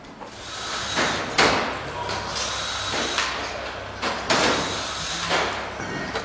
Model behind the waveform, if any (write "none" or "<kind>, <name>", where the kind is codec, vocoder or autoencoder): none